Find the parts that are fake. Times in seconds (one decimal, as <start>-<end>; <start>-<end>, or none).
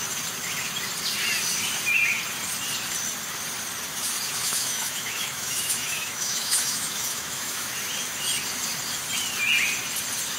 4.4-7.7